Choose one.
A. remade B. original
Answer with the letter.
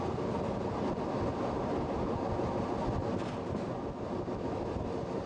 B